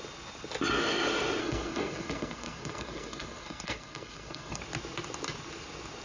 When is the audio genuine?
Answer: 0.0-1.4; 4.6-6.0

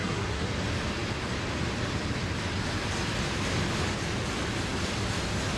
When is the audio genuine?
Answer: 0.5-5.6